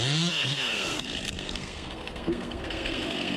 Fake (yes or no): yes